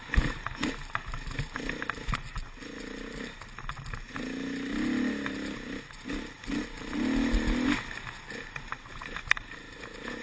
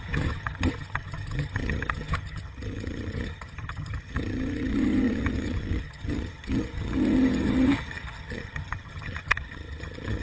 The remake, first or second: second